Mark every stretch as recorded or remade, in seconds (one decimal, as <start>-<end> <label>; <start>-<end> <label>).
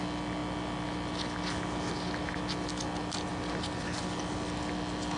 0.0-5.2 recorded